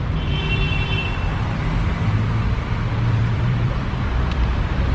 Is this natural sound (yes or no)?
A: no